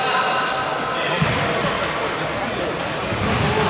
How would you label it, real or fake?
real